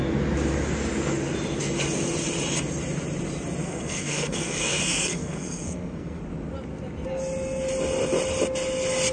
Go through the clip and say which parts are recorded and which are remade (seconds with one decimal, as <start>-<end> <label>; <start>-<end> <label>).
0.0-3.6 recorded; 3.6-6.2 remade; 6.2-9.1 recorded